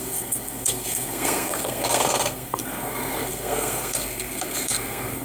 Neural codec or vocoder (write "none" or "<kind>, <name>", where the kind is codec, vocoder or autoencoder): codec, SNAC